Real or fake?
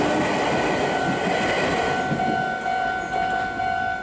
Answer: real